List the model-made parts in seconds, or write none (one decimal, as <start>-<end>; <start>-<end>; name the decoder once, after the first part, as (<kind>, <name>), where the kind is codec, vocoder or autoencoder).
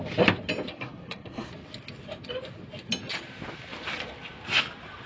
0.7-1.5 (codec, SNAC)